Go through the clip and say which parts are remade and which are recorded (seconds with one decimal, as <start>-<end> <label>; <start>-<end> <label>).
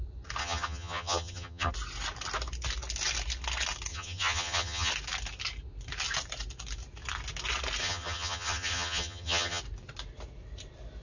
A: 0.0-0.4 recorded; 0.4-1.7 remade; 1.7-3.9 recorded; 3.9-4.9 remade; 4.9-7.8 recorded; 7.8-9.6 remade; 9.6-11.0 recorded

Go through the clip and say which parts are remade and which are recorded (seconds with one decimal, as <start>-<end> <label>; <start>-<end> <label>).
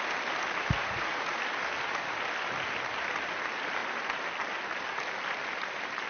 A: 0.0-0.8 recorded; 0.8-1.4 remade; 1.4-6.1 recorded